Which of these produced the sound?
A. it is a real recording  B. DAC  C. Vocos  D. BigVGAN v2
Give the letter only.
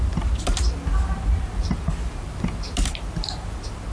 A